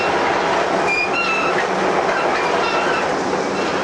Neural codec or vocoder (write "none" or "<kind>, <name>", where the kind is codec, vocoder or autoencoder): none